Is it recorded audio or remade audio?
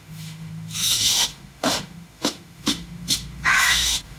remade